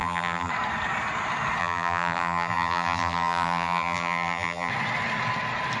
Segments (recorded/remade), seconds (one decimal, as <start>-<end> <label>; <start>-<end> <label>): 0.0-0.5 remade; 0.5-1.6 recorded; 1.6-4.7 remade; 4.7-5.8 recorded